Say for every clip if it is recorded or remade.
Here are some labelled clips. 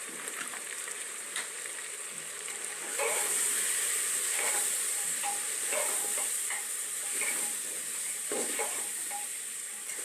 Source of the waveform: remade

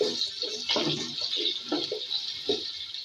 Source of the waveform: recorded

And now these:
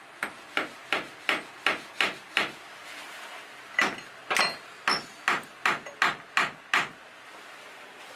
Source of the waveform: recorded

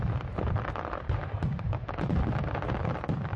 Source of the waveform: recorded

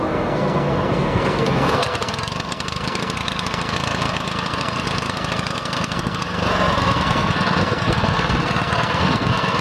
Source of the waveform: remade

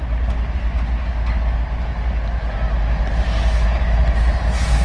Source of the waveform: recorded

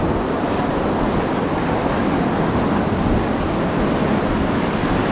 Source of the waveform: recorded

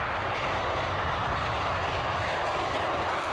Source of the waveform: recorded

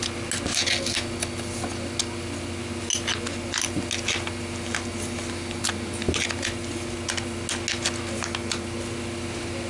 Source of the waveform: recorded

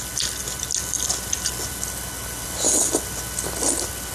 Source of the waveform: recorded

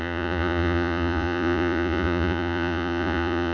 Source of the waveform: remade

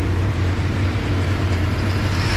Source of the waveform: remade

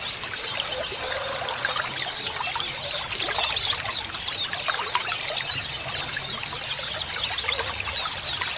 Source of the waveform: recorded